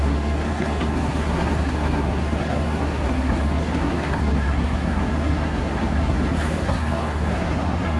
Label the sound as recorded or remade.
remade